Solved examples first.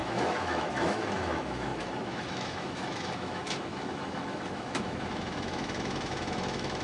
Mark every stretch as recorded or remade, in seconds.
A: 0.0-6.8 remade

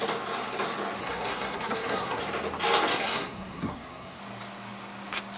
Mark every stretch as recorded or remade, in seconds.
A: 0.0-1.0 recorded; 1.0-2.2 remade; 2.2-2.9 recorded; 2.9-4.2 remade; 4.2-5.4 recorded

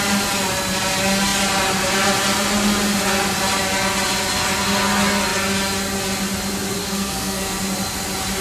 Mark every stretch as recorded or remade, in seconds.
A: 0.0-6.8 recorded; 6.8-7.6 remade; 7.6-8.4 recorded